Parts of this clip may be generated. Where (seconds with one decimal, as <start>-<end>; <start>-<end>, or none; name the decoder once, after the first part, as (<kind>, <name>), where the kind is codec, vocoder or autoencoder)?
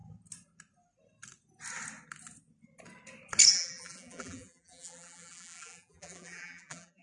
3.5-7.0 (vocoder, BigVGAN v2)